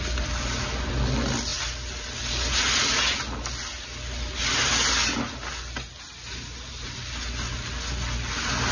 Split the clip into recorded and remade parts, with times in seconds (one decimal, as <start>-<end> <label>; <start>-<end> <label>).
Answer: 0.0-8.7 recorded

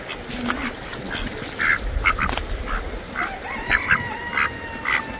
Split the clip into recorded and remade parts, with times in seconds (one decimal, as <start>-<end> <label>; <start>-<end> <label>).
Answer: 0.0-5.2 recorded

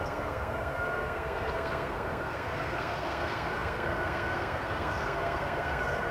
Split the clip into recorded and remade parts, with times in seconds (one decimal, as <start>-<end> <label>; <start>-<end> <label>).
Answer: 0.0-6.1 remade

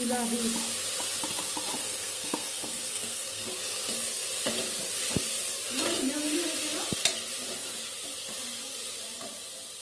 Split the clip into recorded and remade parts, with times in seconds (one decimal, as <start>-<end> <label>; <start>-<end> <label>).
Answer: 0.0-1.8 recorded; 1.8-3.5 remade; 3.5-9.8 recorded

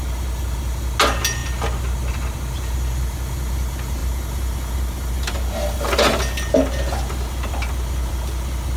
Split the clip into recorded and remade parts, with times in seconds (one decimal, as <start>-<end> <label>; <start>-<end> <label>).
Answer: 0.0-8.8 recorded